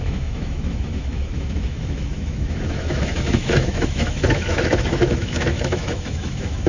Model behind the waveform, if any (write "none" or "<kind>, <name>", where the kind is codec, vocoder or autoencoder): autoencoder, DAC-VAE